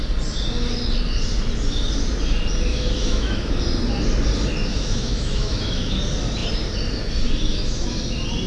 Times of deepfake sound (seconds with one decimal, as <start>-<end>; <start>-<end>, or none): 2.7-3.6; 4.7-6.0; 7.5-8.0

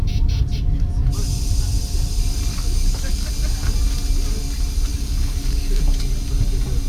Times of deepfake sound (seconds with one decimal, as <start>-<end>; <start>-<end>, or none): 2.5-3.3; 4.9-5.8

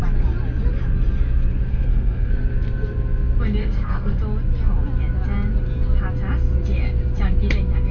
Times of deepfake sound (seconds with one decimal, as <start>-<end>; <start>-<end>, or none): 1.7-2.3; 3.6-4.2

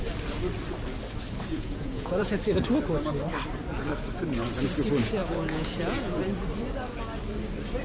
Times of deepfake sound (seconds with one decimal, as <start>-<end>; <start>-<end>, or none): 1.5-2.4; 5.2-6.2

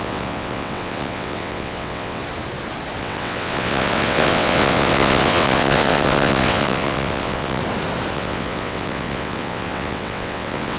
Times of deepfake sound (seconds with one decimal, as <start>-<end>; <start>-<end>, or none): 0.0-2.2; 3.0-7.6; 8.1-10.8

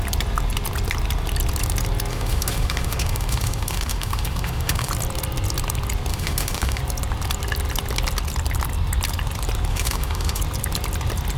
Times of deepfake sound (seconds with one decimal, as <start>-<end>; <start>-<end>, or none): 2.1-4.9; 6.1-6.8; 9.7-10.4

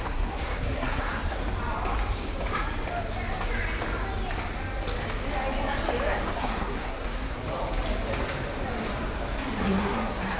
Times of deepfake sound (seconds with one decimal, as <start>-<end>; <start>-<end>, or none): 0.0-1.4; 6.4-7.4; 9.6-10.4

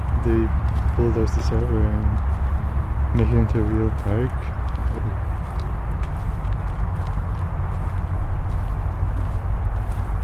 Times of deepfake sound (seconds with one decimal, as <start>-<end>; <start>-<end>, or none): none